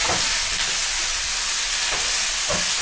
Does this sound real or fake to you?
real